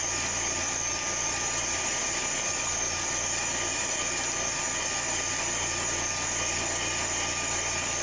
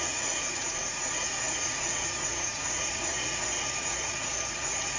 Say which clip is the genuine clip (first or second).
first